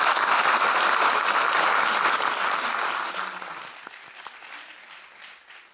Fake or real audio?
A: real